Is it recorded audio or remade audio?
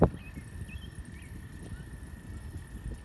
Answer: recorded